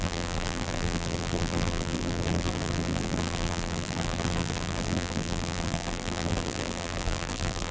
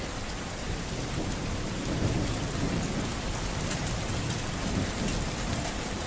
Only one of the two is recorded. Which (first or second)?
second